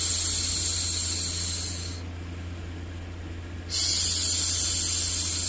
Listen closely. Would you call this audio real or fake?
real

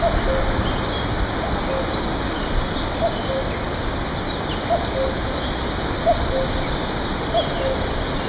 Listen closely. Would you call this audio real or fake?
real